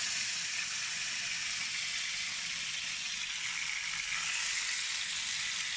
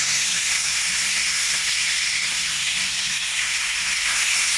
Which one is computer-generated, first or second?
second